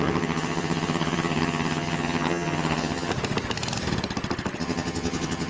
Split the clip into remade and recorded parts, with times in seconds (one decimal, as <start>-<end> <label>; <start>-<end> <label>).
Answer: 0.0-3.1 remade; 3.1-4.6 recorded; 4.6-5.5 remade